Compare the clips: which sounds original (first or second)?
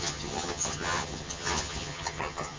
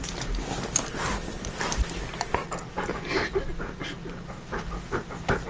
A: second